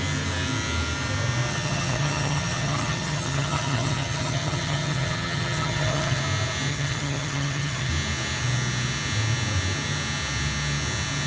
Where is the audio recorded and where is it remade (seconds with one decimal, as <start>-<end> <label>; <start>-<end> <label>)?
0.0-1.5 recorded; 1.5-6.2 remade; 6.2-6.7 recorded; 6.7-7.9 remade; 7.9-11.3 recorded